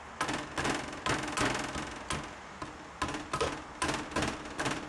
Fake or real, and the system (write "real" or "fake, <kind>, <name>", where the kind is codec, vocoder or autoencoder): real